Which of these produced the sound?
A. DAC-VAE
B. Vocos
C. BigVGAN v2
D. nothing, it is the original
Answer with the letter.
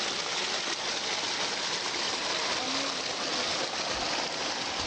D